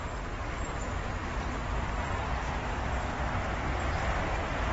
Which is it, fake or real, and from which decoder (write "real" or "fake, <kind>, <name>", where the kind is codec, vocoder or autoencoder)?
real